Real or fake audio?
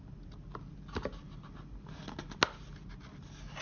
real